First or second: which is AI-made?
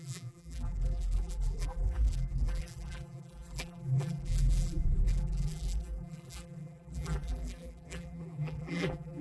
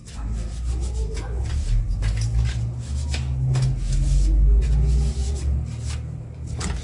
first